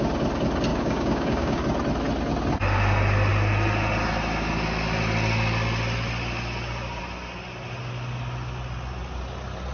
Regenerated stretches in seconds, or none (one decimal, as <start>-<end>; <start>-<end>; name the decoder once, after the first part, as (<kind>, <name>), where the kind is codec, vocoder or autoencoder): 0.7-1.6 (codec, DAC)